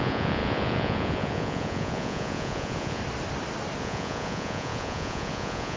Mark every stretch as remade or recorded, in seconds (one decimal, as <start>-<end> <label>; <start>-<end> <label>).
0.0-3.0 remade; 3.0-3.8 recorded; 3.8-5.8 remade